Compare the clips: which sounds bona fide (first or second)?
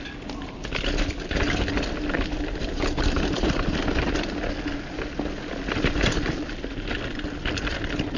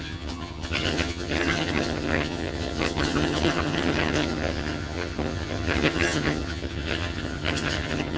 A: first